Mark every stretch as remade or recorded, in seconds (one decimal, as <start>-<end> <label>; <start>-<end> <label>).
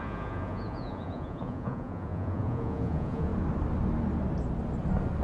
0.0-3.3 remade; 3.3-5.2 recorded